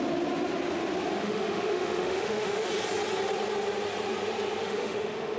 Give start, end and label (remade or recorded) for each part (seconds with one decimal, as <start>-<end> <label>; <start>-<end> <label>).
0.0-1.2 recorded; 1.2-2.7 remade; 2.7-4.6 recorded; 4.6-5.4 remade